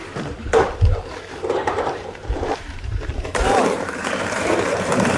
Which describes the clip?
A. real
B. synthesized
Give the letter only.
B